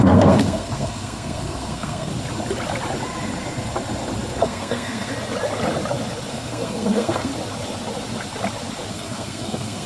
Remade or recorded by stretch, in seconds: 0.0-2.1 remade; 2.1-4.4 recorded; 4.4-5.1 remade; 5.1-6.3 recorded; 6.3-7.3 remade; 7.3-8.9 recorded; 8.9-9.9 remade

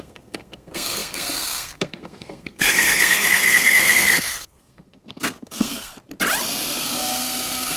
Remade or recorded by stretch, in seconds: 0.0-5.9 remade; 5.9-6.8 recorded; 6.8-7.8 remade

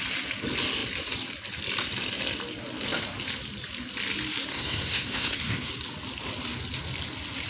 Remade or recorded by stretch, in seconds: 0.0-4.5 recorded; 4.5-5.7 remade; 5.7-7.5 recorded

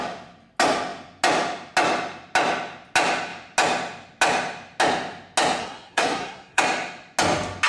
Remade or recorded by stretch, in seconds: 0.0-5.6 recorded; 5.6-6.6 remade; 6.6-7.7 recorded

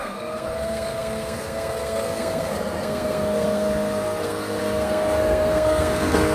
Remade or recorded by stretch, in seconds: 0.0-6.3 remade

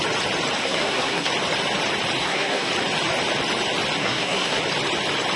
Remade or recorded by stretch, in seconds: 0.0-0.6 recorded; 0.6-1.3 remade; 1.3-2.2 recorded; 2.2-2.7 remade; 2.7-4.0 recorded; 4.0-4.6 remade; 4.6-5.4 recorded